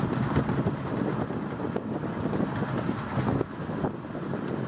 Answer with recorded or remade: recorded